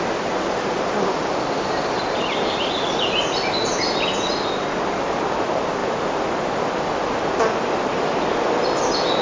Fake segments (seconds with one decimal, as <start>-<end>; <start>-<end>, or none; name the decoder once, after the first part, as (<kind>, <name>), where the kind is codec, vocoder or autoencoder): none